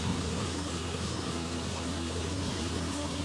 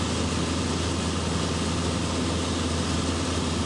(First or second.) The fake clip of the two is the first